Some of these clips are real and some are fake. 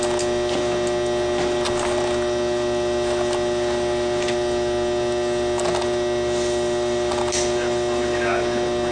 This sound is real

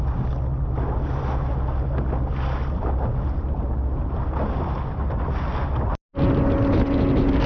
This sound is real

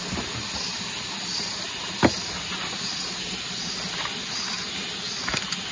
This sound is real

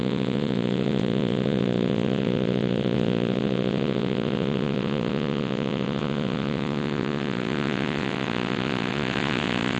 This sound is fake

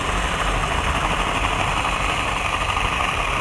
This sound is real